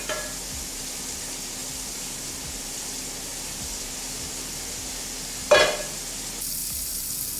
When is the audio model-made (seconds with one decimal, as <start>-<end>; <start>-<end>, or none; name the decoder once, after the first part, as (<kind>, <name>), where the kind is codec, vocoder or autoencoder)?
none